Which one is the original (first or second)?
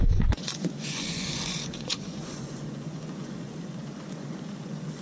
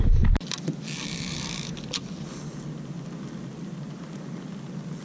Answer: second